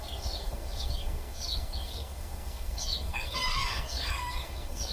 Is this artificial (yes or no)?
yes